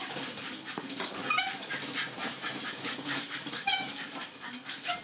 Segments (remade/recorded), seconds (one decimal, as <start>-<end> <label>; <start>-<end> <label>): 0.0-1.8 remade; 1.8-2.7 recorded; 2.7-5.0 remade

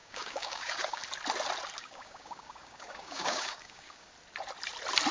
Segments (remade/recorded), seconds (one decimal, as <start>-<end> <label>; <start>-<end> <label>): 0.0-1.0 remade; 1.0-1.8 recorded; 1.8-4.1 remade; 4.1-5.1 recorded